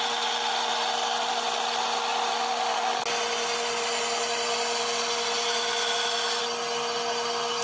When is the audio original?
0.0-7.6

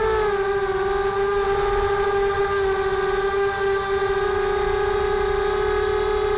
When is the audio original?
0.0-6.4

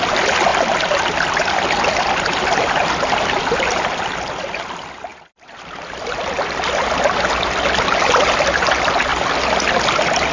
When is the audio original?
0.0-10.3

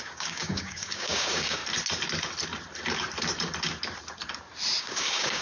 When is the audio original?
1.6-4.8

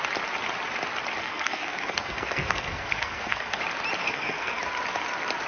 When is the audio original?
0.0-1.2; 3.6-4.0; 4.6-5.5

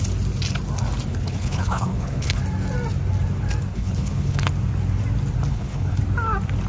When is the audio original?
0.0-1.1; 2.4-3.7; 4.5-5.5; 6.0-6.7

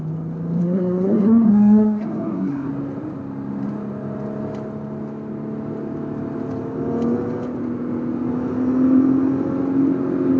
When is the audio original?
0.0-0.6; 2.7-10.4